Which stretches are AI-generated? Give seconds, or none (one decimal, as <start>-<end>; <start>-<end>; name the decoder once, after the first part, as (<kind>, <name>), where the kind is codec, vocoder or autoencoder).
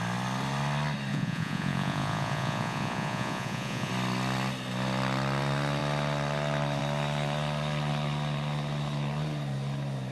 1.1-3.9 (vocoder, Vocos)